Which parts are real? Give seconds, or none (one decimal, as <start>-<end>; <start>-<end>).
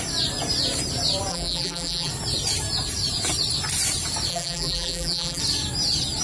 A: 0.0-1.3; 2.1-4.3; 5.4-6.2